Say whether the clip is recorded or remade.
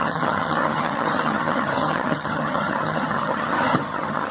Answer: remade